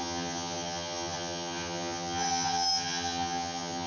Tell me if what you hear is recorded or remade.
remade